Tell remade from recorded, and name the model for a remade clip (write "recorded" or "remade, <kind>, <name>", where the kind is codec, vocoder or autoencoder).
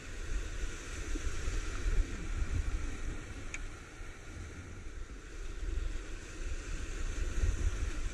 recorded